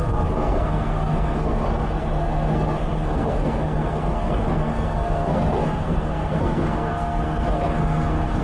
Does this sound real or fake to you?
fake